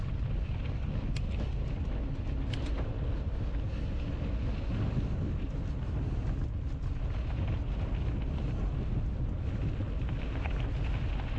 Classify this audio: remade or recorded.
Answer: recorded